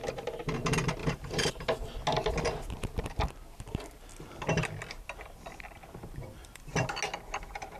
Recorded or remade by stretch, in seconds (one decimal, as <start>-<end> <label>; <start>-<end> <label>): 0.0-1.0 recorded; 1.0-1.6 remade; 1.6-6.0 recorded; 6.0-6.7 remade; 6.7-7.8 recorded